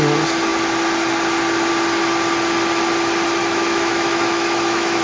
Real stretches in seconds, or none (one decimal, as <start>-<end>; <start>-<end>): 0.0-3.4